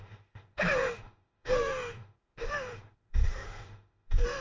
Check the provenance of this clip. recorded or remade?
remade